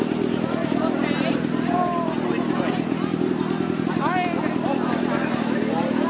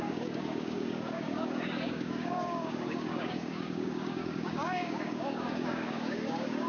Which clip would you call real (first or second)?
first